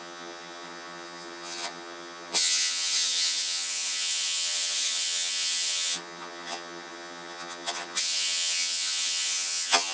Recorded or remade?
remade